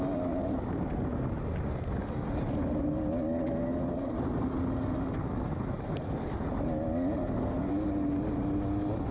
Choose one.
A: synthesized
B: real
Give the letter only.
B